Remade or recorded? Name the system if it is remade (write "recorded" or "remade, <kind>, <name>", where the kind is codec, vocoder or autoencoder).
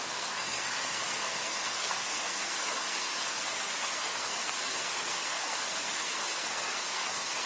remade, codec, SNAC